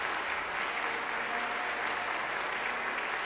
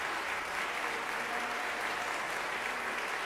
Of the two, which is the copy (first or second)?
second